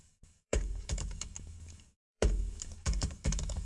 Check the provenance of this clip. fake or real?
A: fake